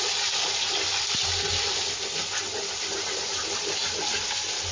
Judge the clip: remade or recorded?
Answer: recorded